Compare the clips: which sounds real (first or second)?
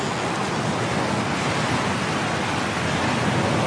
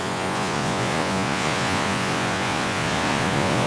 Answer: first